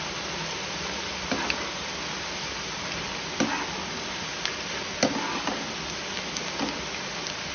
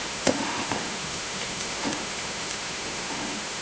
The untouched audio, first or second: first